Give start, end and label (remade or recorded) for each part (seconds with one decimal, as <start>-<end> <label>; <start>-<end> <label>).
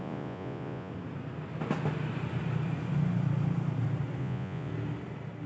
0.0-0.9 remade; 0.9-4.2 recorded; 4.2-4.7 remade; 4.7-5.5 recorded